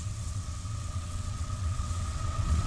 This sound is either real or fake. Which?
fake